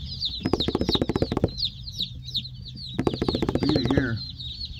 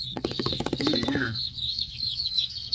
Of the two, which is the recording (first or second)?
first